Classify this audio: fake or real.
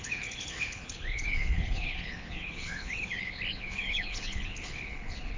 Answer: fake